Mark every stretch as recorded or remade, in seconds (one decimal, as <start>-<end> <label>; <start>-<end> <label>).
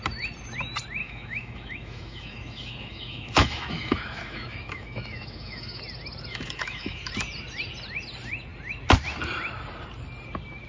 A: 0.0-1.0 recorded; 1.0-5.8 remade; 5.8-6.3 recorded; 6.3-7.1 remade; 7.1-10.7 recorded